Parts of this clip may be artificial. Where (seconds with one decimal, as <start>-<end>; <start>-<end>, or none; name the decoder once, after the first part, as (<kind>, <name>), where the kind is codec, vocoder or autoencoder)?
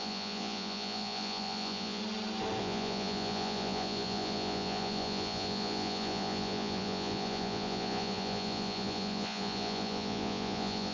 0.0-2.0 (vocoder, Vocos); 2.6-10.9